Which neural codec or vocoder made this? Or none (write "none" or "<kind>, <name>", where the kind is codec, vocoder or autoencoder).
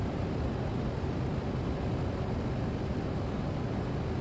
none